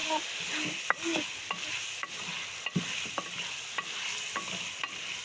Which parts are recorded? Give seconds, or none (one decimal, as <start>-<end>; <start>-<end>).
0.0-5.2

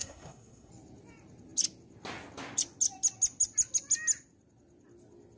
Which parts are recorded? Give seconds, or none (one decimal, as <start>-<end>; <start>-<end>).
0.7-5.4

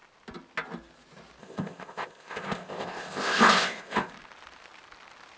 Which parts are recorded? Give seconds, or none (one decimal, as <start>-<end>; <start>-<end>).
0.0-1.4; 4.1-5.4

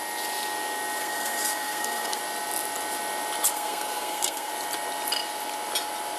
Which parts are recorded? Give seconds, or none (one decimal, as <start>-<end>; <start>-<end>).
0.0-1.0; 2.2-3.5; 4.5-6.2